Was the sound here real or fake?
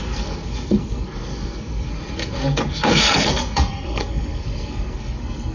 fake